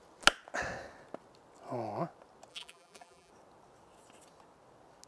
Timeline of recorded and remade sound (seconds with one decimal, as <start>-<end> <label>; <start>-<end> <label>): 0.0-2.5 recorded; 2.5-3.3 remade; 3.3-5.1 recorded